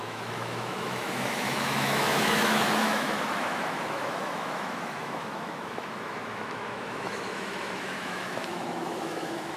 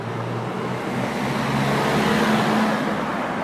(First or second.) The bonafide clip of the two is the second